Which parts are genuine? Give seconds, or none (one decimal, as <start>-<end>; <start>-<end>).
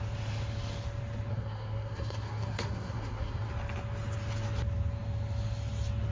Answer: 0.0-1.3; 3.5-6.1